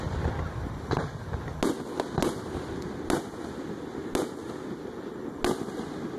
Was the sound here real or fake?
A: real